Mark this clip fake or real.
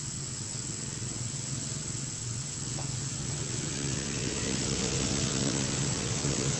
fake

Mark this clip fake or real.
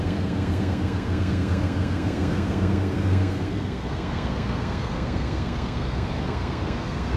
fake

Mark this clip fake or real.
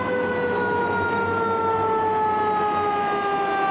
real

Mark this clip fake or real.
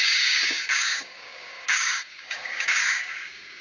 fake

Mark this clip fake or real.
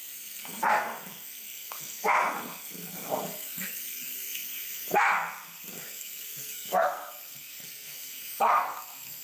fake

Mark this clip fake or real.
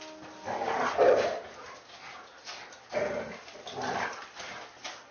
real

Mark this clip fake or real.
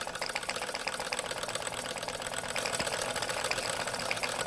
real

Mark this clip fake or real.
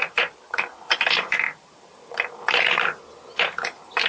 fake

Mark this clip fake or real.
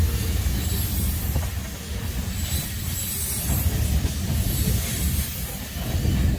real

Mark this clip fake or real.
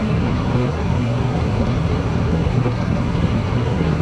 fake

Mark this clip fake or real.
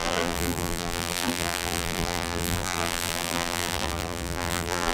fake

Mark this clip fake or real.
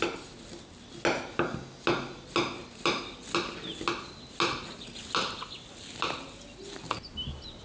real